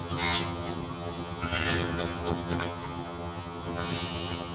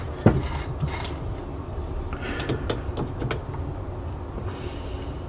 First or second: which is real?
second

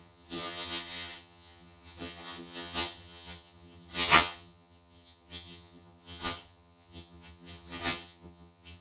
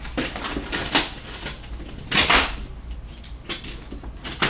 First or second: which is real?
second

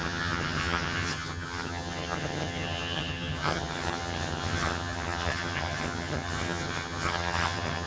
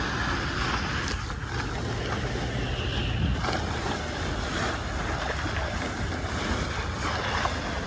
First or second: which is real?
second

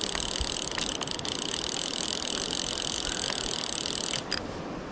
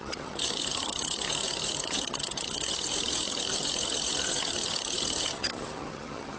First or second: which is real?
first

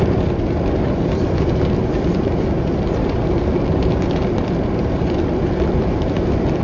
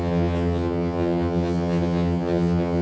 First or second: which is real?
first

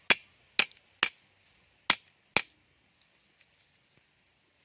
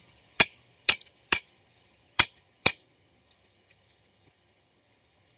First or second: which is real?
first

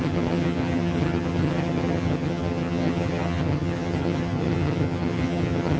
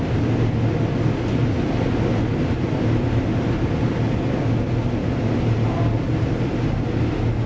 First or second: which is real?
second